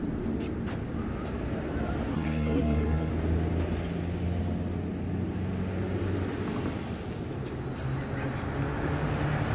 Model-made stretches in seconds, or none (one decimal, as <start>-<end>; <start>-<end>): 2.1-3.1